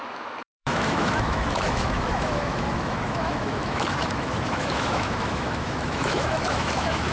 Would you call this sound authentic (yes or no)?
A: no